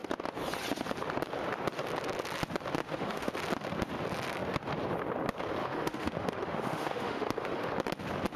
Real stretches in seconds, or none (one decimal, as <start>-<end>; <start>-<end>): 0.0-2.8; 3.3-5.6; 7.7-8.4

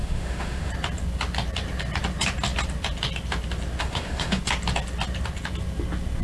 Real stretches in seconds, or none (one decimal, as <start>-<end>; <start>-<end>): 0.7-3.8; 4.4-6.2

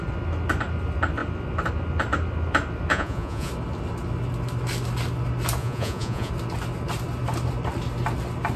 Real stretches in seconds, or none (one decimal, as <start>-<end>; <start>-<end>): 0.0-2.9; 3.5-5.6; 6.3-8.6

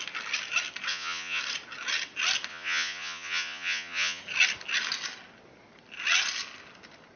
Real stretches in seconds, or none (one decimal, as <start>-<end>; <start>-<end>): 0.0-0.9; 1.4-2.5; 4.2-7.2

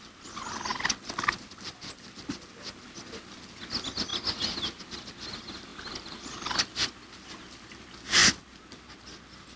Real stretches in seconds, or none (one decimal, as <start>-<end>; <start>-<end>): 0.0-9.6

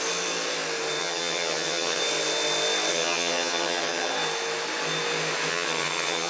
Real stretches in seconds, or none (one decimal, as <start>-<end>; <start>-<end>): 0.0-1.0; 2.0-2.9; 4.1-5.5

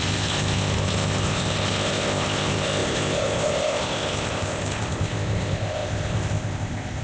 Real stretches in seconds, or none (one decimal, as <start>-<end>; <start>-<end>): none